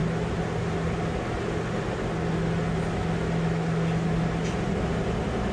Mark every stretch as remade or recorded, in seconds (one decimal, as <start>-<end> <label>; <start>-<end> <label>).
0.0-5.5 recorded